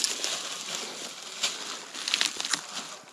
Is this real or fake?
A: real